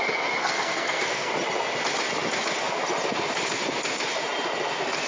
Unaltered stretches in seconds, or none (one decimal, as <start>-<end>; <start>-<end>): 0.0-0.4; 1.3-5.1